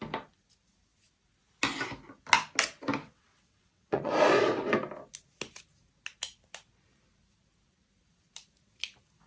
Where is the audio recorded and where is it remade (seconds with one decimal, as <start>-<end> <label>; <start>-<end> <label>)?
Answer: 0.0-3.0 recorded; 3.0-4.1 remade; 4.1-9.3 recorded